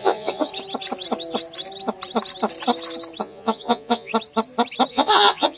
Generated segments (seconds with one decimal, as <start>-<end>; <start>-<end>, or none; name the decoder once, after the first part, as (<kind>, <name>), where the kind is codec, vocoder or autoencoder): 0.0-0.5 (vocoder, Vocos); 3.2-4.1; 4.9-5.6